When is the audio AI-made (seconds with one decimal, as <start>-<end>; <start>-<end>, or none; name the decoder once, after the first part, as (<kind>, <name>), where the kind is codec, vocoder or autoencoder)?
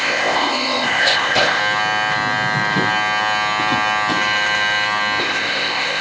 0.0-1.6 (codec, ZipCodec); 5.2-6.0